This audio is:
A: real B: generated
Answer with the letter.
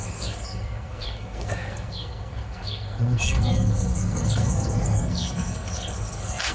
B